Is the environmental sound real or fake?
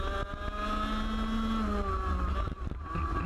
real